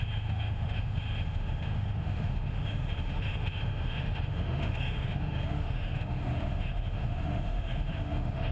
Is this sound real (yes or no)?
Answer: no